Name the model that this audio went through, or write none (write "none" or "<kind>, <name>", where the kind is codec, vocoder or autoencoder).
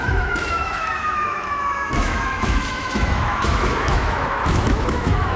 autoencoder, DAC-VAE